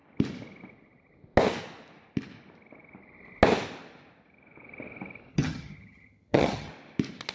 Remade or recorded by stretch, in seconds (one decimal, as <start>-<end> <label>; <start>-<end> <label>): 0.0-5.3 recorded; 5.3-6.7 remade; 6.7-7.3 recorded